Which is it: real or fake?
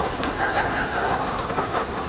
fake